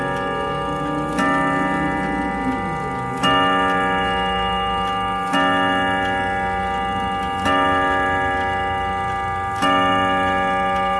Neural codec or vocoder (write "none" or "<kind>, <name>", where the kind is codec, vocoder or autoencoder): none